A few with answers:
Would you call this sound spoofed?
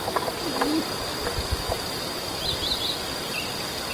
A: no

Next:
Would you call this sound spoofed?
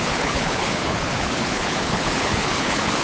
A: yes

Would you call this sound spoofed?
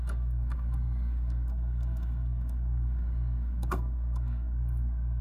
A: yes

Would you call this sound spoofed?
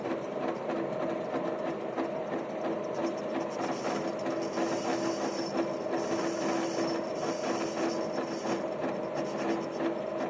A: no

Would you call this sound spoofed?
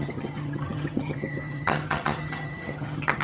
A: yes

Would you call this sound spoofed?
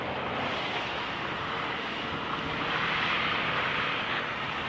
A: no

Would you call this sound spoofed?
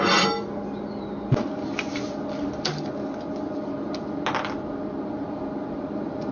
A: no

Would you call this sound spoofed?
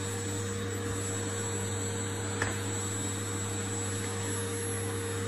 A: no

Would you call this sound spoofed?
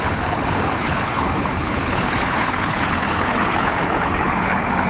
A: yes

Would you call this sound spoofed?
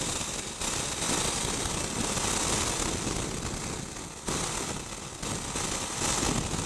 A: no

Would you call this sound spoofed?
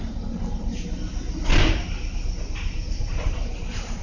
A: no